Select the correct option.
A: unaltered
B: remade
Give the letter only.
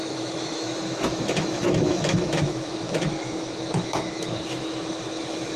B